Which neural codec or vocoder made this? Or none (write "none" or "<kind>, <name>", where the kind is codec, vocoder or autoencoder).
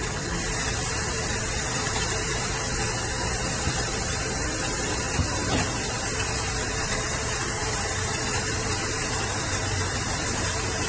vocoder, BigVGAN v2